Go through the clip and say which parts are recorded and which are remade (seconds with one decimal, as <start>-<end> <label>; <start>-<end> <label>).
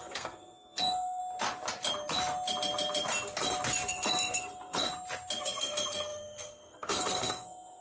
0.0-1.2 remade; 1.2-3.9 recorded; 3.9-4.9 remade; 4.9-5.4 recorded; 5.4-7.8 remade